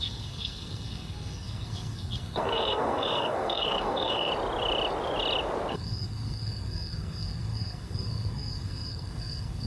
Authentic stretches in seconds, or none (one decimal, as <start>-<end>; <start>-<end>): 4.3-5.7